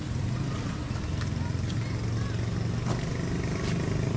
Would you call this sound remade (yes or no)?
no